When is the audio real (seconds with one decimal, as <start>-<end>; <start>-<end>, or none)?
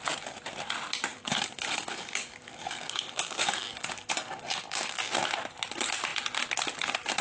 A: 0.0-1.1; 5.0-7.2